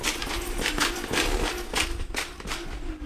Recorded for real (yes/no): yes